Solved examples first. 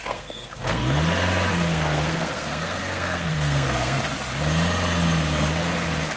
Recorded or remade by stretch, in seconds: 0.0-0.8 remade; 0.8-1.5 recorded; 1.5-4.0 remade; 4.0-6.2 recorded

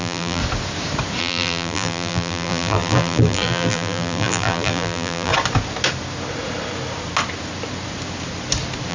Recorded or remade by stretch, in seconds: 0.0-0.4 remade; 0.4-1.2 recorded; 1.2-5.3 remade; 5.3-8.9 recorded

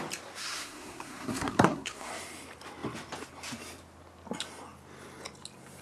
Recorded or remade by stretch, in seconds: 0.0-0.4 recorded; 0.4-2.1 remade; 2.1-5.8 recorded

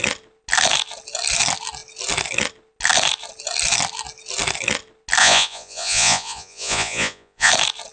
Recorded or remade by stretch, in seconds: 0.0-5.2 recorded; 5.2-7.5 remade; 7.5-7.9 recorded

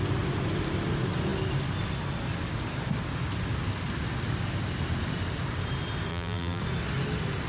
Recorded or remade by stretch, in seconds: 0.0-6.1 recorded; 6.1-6.6 remade; 6.6-7.5 recorded

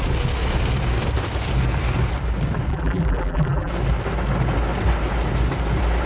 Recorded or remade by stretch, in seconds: 0.0-2.7 recorded; 2.7-3.7 remade; 3.7-6.1 recorded